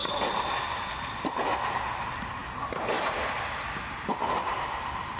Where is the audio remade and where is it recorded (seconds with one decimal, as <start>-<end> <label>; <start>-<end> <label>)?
0.0-5.2 recorded